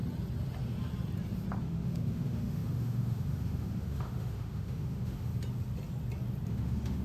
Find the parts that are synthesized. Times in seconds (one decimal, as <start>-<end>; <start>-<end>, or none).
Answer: 1.6-5.3; 6.5-7.0